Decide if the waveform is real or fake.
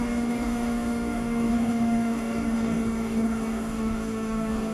fake